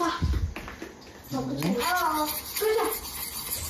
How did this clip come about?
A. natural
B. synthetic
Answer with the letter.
A